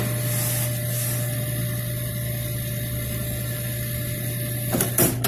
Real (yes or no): yes